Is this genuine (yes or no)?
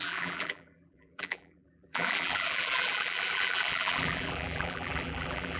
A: no